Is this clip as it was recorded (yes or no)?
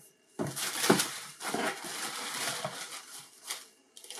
yes